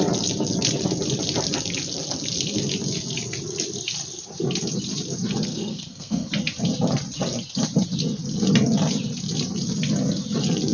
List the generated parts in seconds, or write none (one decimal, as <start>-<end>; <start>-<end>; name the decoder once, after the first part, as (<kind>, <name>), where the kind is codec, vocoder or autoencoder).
5.5-6.3 (codec, SNAC)